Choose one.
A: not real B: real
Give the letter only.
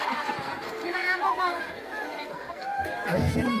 A